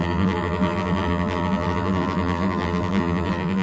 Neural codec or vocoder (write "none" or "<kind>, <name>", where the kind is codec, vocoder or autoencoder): vocoder, BigVGAN v2